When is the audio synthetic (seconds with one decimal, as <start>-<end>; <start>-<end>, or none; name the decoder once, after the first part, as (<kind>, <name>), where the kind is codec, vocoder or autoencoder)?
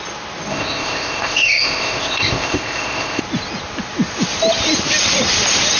0.5-3.2 (codec, ZipCodec)